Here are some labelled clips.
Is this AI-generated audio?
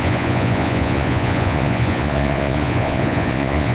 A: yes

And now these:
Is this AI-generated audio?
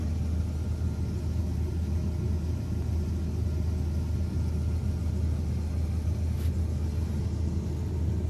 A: no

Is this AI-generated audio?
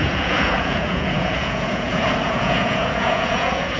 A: yes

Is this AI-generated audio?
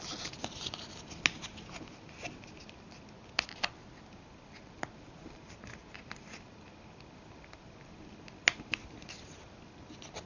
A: no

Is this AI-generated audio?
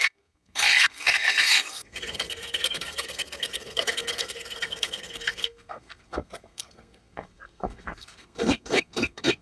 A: yes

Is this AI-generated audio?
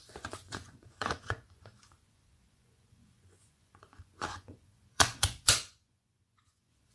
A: yes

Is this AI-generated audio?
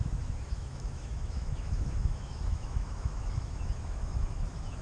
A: yes